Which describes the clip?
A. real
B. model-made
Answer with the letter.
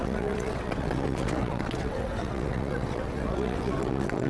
B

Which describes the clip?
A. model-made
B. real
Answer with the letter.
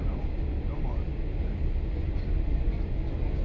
B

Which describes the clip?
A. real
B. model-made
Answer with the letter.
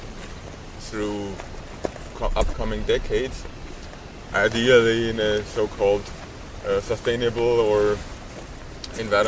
A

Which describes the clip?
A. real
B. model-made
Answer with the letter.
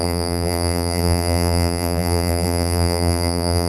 B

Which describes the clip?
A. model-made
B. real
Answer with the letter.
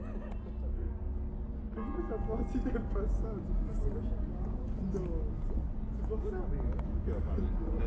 B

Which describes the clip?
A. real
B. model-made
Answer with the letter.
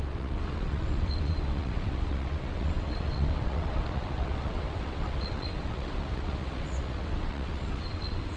B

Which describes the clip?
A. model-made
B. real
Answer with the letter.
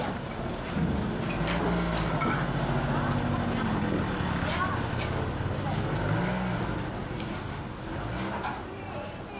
B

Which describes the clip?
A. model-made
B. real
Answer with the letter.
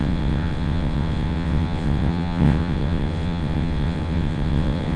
A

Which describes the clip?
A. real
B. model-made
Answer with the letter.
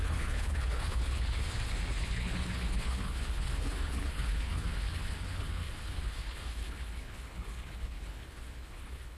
B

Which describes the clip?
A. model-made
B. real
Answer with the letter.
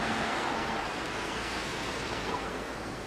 A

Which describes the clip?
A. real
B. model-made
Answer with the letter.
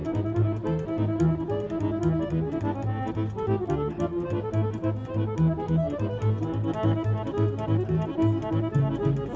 A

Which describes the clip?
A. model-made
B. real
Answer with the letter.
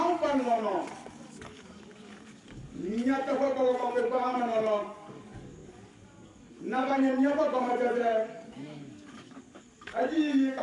A